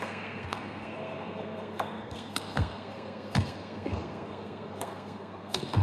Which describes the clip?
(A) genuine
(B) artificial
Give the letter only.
B